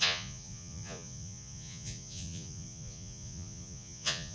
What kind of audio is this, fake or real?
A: fake